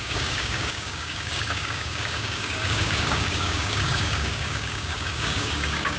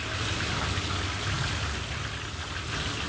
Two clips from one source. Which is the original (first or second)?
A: second